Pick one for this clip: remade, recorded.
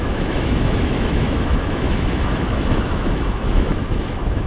remade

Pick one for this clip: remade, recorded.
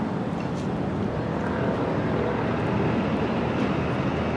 recorded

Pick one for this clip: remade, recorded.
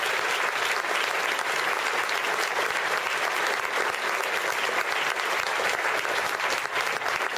recorded